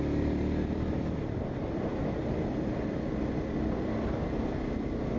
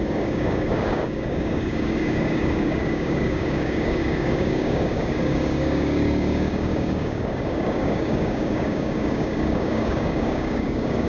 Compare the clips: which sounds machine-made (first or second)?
second